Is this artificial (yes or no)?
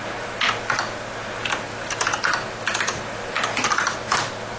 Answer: no